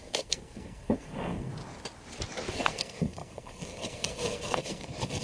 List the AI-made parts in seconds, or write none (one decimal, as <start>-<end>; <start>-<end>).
0.0-1.5; 2.5-5.2